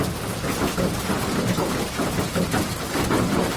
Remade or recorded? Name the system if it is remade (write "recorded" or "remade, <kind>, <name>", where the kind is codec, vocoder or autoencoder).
recorded